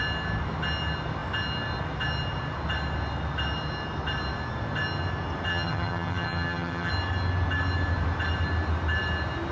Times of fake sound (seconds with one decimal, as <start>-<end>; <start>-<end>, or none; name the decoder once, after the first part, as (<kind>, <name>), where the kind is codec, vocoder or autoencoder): 5.5-6.9 (vocoder, HiFi-GAN)